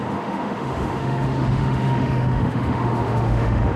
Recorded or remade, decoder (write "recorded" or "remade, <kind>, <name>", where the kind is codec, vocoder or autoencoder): remade, autoencoder, DAC-VAE